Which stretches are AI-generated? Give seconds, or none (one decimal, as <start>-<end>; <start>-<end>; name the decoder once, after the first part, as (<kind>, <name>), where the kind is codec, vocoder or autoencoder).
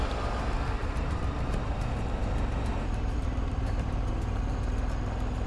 0.8-4.1 (vocoder, BigVGAN v2)